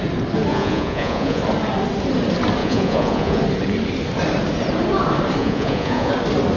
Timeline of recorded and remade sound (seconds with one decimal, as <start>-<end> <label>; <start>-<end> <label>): 0.0-0.5 recorded; 0.5-1.4 remade; 1.4-2.6 recorded; 2.6-3.4 remade; 3.4-5.4 recorded; 5.4-6.1 remade; 6.1-6.6 recorded